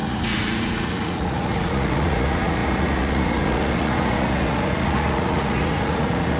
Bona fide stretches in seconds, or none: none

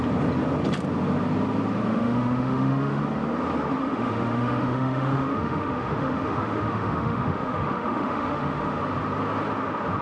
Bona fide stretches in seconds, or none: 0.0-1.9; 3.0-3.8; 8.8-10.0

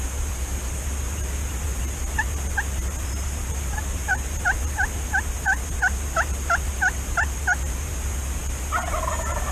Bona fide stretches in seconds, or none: 0.0-9.5

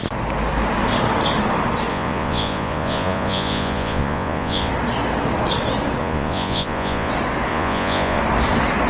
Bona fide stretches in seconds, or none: 0.0-1.9; 4.7-6.0; 7.1-7.5; 8.2-8.9

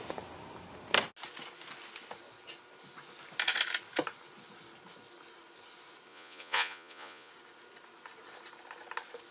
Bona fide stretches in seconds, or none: 0.0-6.1; 7.3-9.3